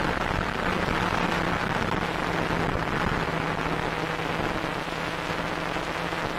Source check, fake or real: real